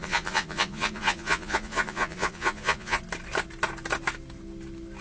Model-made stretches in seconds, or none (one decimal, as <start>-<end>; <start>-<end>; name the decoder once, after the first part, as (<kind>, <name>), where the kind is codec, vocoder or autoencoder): 0.0-3.0 (vocoder, Vocos)